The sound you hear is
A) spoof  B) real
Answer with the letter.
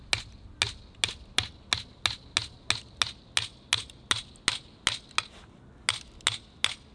B